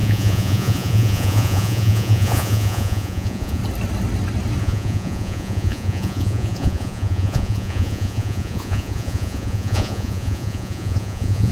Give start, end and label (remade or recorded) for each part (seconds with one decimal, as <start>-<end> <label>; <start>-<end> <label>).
0.0-3.6 remade; 3.6-4.6 recorded; 4.6-11.5 remade